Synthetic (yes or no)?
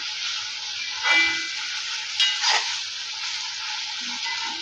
no